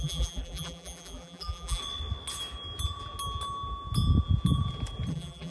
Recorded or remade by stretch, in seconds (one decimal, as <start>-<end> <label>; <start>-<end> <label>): 0.0-1.8 remade; 1.8-5.1 recorded; 5.1-5.5 remade